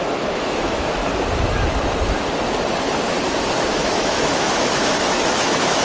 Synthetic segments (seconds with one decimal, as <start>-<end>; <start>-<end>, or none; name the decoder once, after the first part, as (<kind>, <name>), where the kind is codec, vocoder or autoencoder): 0.0-1.0 (autoencoder, DAC-VAE); 3.7-5.8